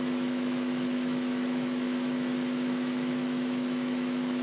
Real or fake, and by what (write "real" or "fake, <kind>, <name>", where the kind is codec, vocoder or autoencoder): fake, autoencoder, DAC-VAE